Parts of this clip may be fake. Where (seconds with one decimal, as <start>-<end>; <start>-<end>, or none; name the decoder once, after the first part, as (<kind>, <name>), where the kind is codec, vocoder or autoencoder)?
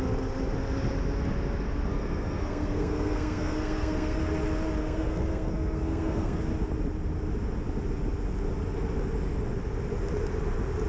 1.9-4.2 (codec, SNAC); 4.8-6.4